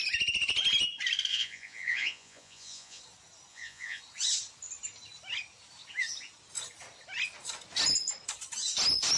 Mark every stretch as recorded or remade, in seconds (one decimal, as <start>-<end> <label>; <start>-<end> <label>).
0.0-1.3 recorded; 1.3-3.0 remade; 3.0-3.5 recorded; 3.5-4.0 remade; 4.0-9.2 recorded